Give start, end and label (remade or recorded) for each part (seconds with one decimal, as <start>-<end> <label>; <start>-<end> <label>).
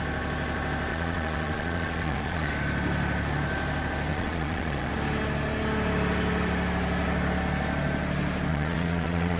0.0-0.9 recorded; 0.9-2.5 remade; 2.5-4.1 recorded; 4.1-4.9 remade; 4.9-8.5 recorded; 8.5-9.4 remade